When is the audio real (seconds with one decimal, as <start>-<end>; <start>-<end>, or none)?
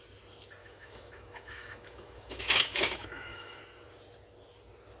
0.0-0.6; 3.6-5.0